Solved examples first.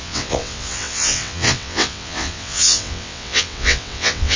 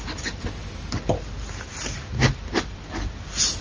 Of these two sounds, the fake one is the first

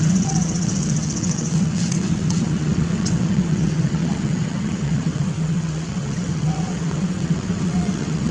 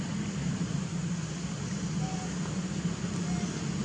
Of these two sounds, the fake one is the first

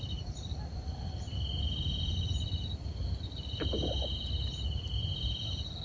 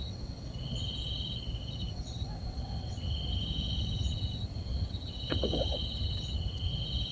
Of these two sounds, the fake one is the second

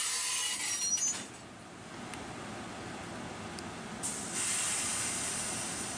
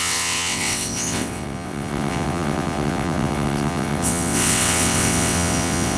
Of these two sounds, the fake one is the second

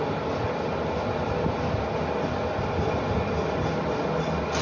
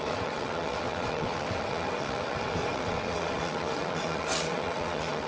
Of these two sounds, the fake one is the second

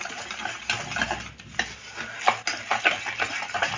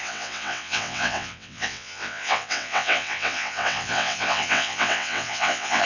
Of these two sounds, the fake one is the second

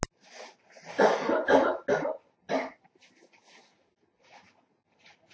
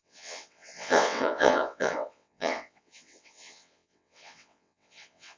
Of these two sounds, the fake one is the second